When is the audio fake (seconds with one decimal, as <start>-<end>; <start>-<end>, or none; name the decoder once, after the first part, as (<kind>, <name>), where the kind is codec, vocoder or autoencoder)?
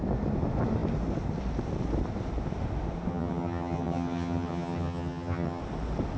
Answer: 3.1-5.6 (vocoder, HiFi-GAN)